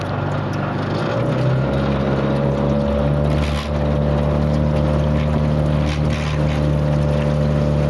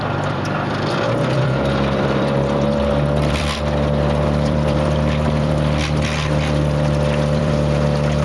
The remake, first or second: second